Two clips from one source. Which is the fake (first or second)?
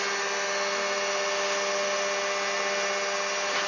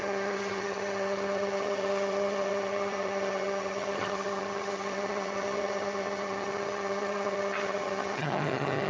second